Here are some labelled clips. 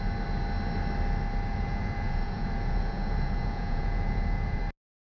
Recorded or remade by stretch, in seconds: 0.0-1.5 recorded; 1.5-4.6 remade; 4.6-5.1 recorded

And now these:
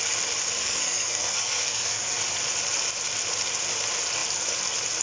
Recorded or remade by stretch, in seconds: 0.0-0.6 recorded; 0.6-2.2 remade; 2.2-5.0 recorded

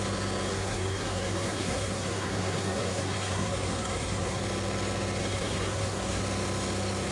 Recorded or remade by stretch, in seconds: 0.0-0.5 recorded; 0.5-4.4 remade; 4.4-5.2 recorded; 5.2-6.2 remade; 6.2-7.1 recorded

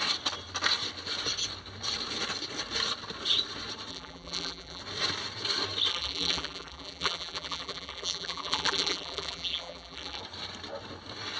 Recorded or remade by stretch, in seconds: 0.0-3.9 recorded; 3.9-4.8 remade; 4.8-5.9 recorded; 5.9-10.2 remade; 10.2-11.4 recorded

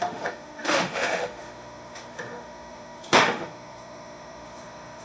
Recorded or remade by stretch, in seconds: 0.0-5.0 remade

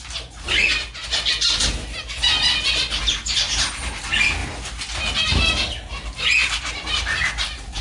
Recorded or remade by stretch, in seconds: 0.0-7.8 recorded

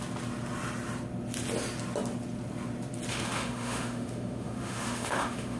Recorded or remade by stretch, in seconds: 0.0-3.1 recorded; 3.1-5.6 remade